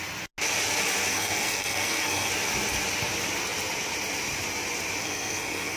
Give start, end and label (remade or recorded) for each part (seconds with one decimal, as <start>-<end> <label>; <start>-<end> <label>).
0.0-1.1 recorded; 1.1-2.3 remade; 2.3-5.0 recorded; 5.0-5.8 remade